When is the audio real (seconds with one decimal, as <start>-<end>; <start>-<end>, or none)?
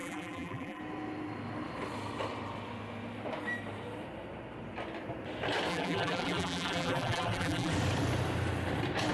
0.8-5.7; 7.7-9.1